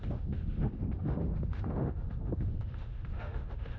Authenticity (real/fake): fake